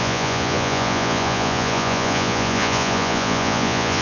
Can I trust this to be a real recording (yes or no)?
no